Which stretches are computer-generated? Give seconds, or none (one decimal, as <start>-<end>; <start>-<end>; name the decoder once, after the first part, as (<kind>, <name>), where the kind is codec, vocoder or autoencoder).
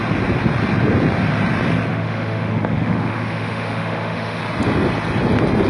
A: 1.9-4.4 (autoencoder, DAC-VAE)